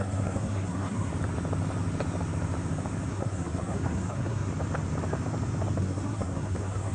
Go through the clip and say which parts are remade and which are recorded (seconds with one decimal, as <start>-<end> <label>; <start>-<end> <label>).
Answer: 0.0-1.1 remade; 1.1-3.1 recorded; 3.1-4.5 remade; 4.5-5.8 recorded; 5.8-6.9 remade